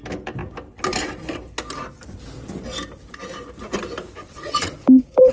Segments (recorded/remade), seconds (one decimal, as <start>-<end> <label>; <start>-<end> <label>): 0.0-4.2 recorded; 4.2-5.3 remade